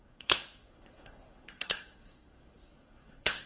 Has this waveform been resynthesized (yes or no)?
yes